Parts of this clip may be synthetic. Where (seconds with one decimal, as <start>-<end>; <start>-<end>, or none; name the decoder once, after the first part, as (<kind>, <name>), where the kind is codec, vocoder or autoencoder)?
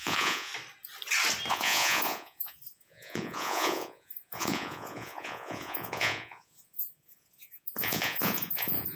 0.0-0.5 (vocoder, Vocos); 1.5-9.0